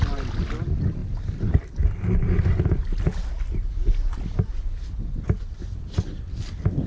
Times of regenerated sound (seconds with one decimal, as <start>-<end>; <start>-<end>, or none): none